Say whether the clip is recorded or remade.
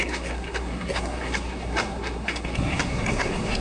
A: remade